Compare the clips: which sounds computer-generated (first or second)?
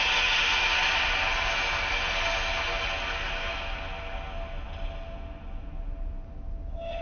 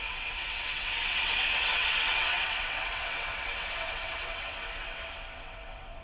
second